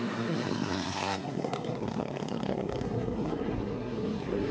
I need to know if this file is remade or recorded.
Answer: remade